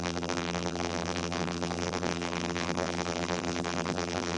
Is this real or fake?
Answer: fake